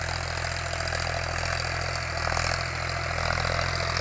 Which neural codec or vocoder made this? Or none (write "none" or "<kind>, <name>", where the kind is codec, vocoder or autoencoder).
none